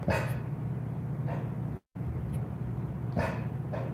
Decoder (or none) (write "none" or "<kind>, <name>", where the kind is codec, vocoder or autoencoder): none